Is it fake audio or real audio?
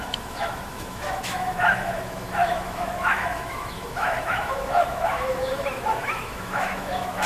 fake